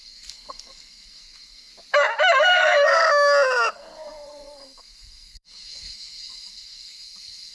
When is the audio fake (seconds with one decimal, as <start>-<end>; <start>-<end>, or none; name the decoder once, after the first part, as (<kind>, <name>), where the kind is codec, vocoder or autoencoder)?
0.0-1.7 (codec, SNAC); 2.4-3.0; 3.7-7.5